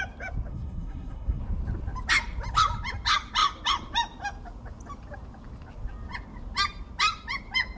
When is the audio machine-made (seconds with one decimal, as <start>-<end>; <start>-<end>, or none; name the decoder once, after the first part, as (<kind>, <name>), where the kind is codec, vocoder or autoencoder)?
0.5-1.4 (codec, SNAC)